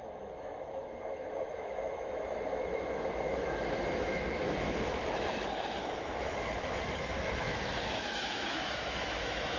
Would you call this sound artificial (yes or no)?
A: yes